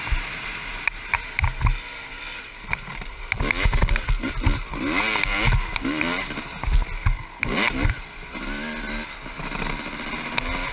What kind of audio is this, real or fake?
real